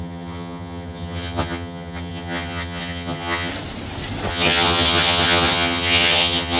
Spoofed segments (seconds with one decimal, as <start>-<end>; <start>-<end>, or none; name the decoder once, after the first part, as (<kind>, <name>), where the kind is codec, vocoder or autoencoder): 0.0-3.5 (vocoder, HiFi-GAN); 4.3-6.6